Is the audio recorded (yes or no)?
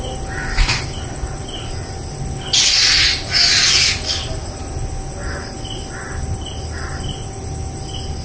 yes